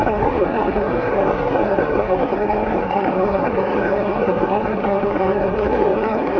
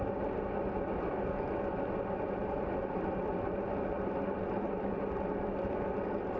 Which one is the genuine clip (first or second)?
second